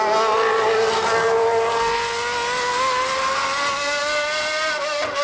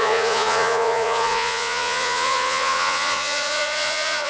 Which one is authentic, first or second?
first